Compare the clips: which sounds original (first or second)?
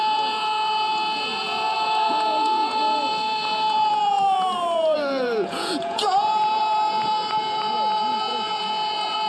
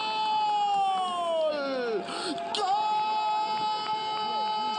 second